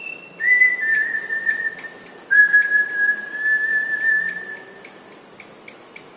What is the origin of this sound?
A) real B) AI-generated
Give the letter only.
A